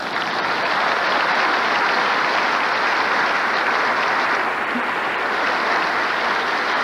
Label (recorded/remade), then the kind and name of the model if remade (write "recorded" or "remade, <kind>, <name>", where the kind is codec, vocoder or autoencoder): recorded